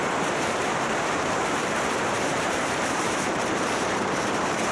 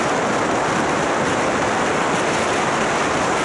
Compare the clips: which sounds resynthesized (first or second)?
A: first